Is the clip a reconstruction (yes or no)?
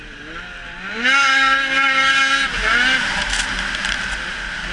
no